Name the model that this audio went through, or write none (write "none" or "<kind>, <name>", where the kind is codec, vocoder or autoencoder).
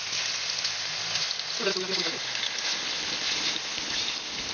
none